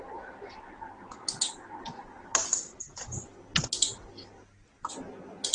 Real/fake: real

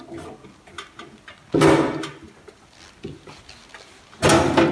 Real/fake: real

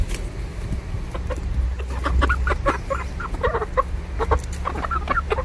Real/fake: real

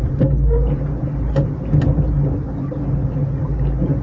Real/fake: real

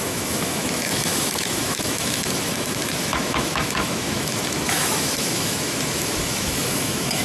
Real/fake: fake